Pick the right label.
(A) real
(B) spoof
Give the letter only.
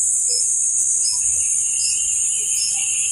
A